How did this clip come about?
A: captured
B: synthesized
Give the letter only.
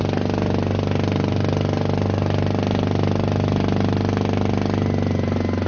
A